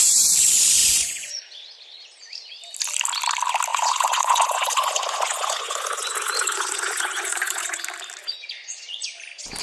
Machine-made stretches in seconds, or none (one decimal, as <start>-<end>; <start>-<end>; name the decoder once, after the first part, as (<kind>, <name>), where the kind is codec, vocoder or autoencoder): 0.8-1.4 (vocoder, Vocos); 3.7-7.8; 8.2-9.2